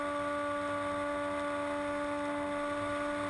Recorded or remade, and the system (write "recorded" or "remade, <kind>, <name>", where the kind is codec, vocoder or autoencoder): recorded